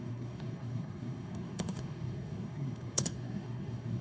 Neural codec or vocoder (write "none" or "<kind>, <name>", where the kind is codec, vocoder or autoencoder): codec, SNAC